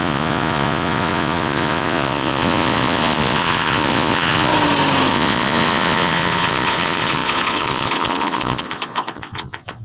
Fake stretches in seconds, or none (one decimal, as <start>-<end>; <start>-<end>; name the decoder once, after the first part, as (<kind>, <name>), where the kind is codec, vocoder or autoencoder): 0.0-4.5 (vocoder, Vocos); 5.1-9.8